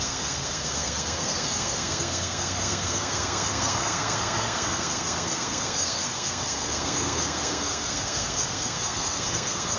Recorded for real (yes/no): no